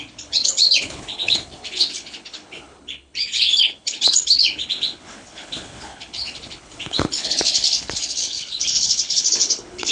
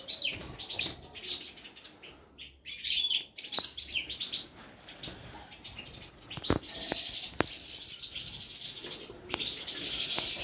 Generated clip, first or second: first